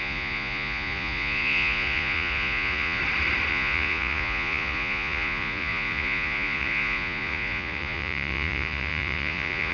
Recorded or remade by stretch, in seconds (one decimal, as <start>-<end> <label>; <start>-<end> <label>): 0.0-3.0 remade; 3.0-3.5 recorded; 3.5-9.7 remade